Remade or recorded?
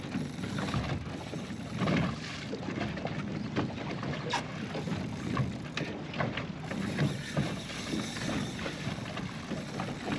recorded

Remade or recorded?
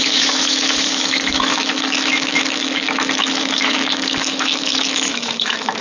remade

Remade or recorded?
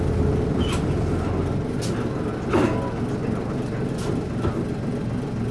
recorded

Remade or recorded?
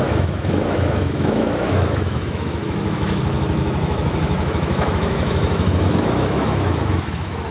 remade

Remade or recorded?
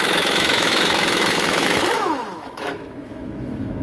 remade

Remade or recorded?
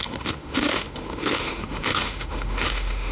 remade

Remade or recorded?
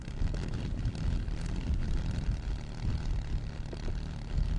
recorded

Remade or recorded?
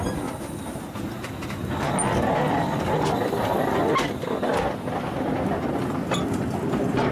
recorded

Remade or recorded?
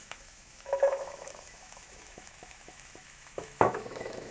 remade